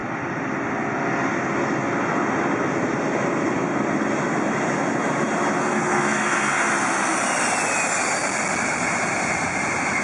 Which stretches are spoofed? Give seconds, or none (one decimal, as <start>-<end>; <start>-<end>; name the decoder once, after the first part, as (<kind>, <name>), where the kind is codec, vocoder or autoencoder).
5.6-6.7 (codec, SNAC)